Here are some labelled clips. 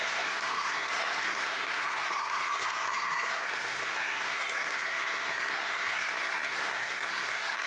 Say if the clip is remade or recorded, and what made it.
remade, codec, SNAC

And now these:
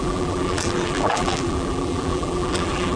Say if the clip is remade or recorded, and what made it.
remade, vocoder, BigVGAN v2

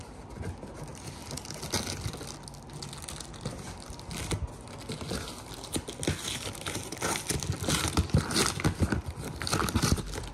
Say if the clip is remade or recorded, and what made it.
recorded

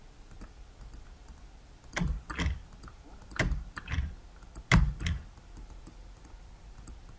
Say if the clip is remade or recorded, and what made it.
recorded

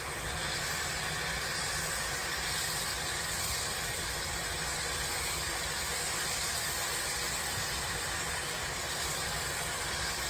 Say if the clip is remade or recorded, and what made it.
recorded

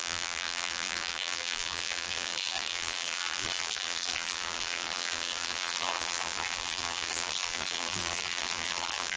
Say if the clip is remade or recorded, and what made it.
remade, vocoder, BigVGAN v2